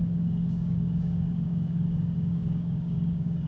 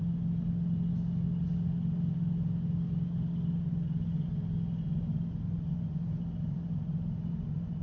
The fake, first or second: first